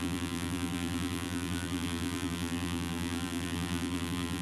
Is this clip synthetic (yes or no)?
yes